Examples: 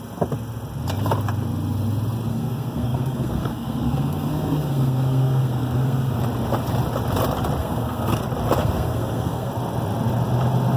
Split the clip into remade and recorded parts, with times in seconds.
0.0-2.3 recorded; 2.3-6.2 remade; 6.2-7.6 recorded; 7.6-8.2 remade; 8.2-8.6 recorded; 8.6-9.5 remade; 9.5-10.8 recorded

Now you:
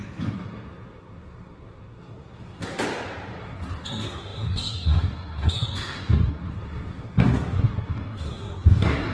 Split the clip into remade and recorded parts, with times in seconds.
0.0-2.8 remade; 2.8-3.4 recorded; 3.4-9.1 remade

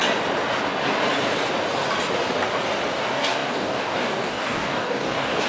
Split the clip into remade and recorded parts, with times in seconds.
0.0-3.0 recorded; 3.0-5.5 remade

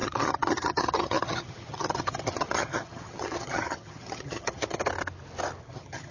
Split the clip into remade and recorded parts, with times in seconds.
0.0-4.8 remade; 4.8-5.6 recorded; 5.6-6.1 remade